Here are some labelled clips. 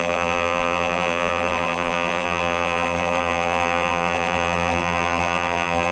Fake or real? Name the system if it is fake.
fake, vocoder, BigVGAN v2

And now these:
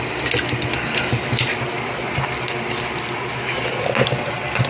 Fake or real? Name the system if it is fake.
real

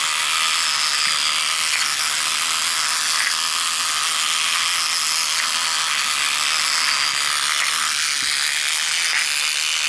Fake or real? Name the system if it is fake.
real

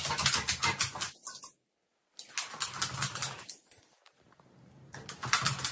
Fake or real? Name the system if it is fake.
real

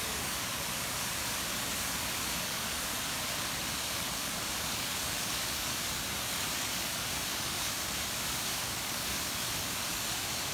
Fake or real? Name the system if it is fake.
fake, codec, DAC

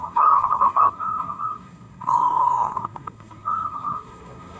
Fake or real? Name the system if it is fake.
fake, codec, SNAC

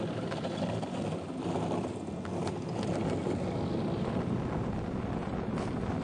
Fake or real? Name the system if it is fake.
real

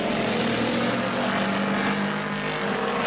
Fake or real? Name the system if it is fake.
real